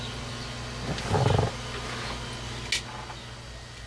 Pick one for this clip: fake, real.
real